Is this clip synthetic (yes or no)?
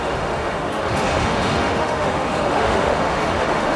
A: yes